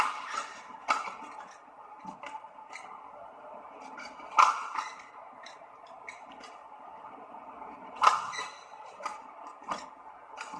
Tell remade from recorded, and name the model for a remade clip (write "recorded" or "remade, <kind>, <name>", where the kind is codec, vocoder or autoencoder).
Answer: recorded